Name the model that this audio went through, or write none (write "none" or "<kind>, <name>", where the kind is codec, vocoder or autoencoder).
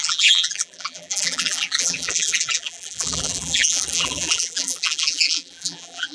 vocoder, BigVGAN v2